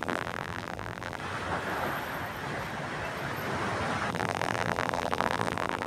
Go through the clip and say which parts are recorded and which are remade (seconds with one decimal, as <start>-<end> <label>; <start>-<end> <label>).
0.0-1.2 remade; 1.2-4.1 recorded; 4.1-5.9 remade